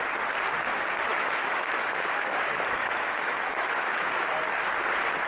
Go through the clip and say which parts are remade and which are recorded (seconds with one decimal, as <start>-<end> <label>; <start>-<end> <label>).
0.0-1.1 recorded; 1.1-4.3 remade; 4.3-5.3 recorded